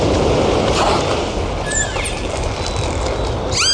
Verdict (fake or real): real